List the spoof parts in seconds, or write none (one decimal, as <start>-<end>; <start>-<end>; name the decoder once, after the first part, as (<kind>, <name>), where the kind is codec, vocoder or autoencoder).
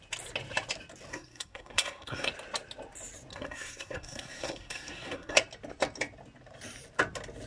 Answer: 1.1-2.3 (codec, SNAC); 3.3-5.4